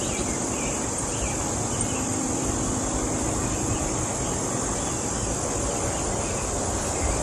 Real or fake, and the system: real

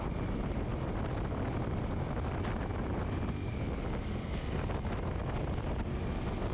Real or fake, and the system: real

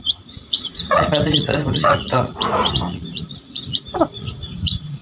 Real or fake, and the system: fake, vocoder, Vocos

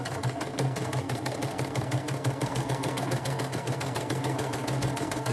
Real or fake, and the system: fake, codec, SNAC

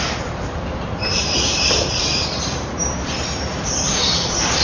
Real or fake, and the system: fake, vocoder, BigVGAN v2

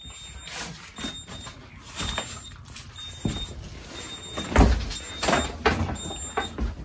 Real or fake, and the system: real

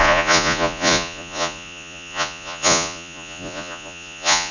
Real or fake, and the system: fake, vocoder, Vocos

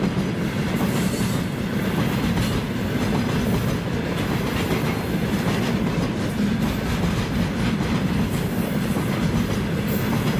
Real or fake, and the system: real